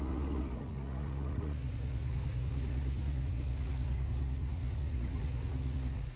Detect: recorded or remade remade